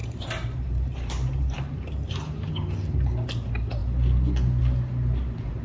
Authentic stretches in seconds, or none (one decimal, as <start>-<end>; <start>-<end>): 2.5-5.6